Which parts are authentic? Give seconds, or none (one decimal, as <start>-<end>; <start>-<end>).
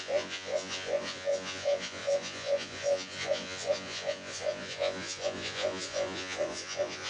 none